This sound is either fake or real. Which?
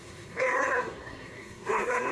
fake